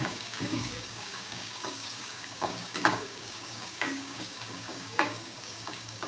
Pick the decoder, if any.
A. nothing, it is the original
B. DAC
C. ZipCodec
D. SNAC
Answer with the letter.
B